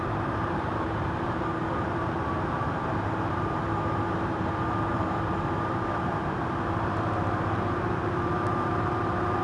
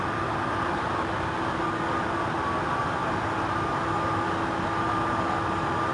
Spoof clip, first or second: first